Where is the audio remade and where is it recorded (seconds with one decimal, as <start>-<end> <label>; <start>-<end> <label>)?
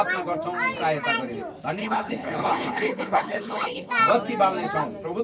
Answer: 0.0-1.8 recorded; 1.8-3.9 remade; 3.9-5.2 recorded